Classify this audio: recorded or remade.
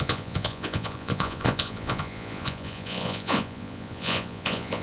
remade